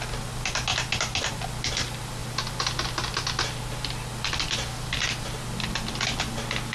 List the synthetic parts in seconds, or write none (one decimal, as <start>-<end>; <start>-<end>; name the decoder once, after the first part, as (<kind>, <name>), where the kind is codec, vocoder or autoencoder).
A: none